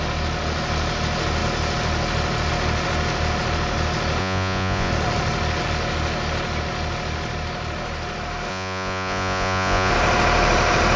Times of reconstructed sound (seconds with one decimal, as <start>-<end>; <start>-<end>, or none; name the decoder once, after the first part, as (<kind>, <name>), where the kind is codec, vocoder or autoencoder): 4.2-4.9 (vocoder, Vocos); 8.5-9.9